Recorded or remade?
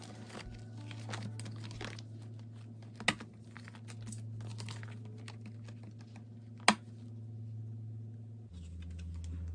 recorded